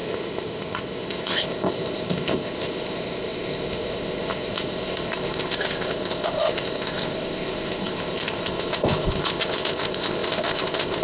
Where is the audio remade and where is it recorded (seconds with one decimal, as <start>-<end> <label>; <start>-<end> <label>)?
0.0-11.0 remade